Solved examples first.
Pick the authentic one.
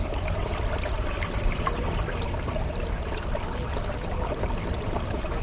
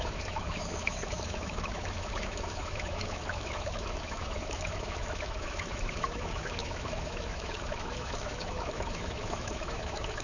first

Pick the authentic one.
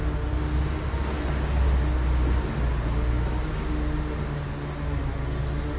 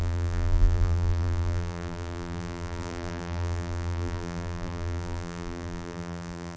first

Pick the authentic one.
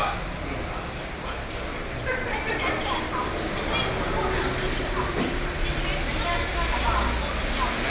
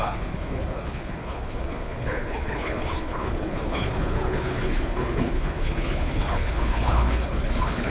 first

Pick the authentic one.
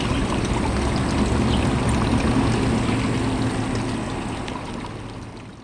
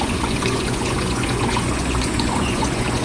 first